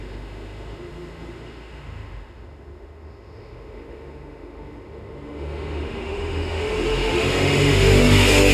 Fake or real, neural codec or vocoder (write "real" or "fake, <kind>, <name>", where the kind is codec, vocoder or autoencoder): fake, autoencoder, DAC-VAE